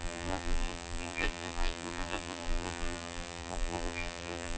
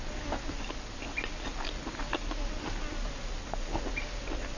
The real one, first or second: second